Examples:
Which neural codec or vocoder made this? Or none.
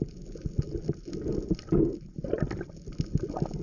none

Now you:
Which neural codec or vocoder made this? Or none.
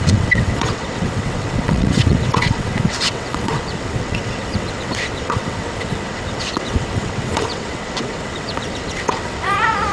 vocoder, WaveNeXt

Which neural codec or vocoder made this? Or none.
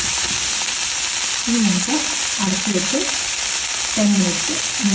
none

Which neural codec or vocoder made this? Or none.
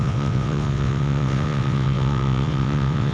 vocoder, WaveNeXt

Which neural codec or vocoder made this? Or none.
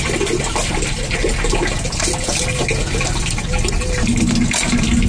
none